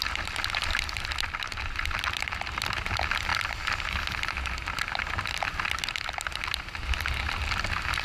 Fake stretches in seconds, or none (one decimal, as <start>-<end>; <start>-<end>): none